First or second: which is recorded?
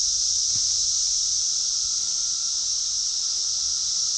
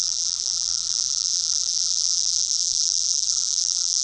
first